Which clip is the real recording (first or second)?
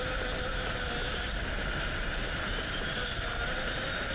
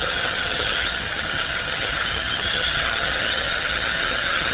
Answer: first